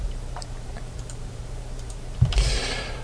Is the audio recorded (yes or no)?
no